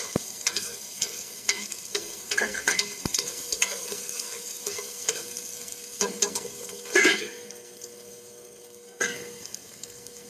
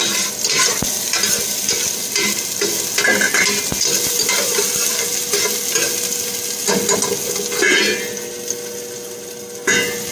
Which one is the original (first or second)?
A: second